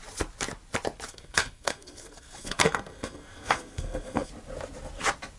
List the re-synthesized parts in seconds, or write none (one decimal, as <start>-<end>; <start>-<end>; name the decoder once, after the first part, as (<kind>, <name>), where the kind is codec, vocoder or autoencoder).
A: 1.1-4.3 (codec, SNAC)